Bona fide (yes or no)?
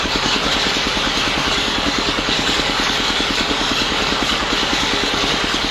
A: no